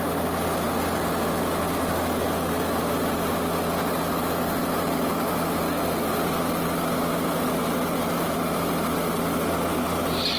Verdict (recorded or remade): recorded